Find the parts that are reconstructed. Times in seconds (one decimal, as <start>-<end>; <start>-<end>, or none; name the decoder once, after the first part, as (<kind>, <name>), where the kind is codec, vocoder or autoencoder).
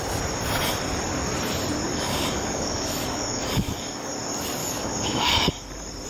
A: 1.8-4.1 (codec, DAC); 4.6-5.5